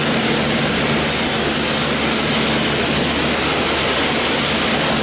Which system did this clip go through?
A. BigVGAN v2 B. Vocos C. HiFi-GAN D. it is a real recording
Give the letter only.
D